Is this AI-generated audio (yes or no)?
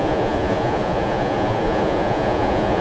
yes